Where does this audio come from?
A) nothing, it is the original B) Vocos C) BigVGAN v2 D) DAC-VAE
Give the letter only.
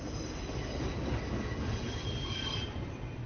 A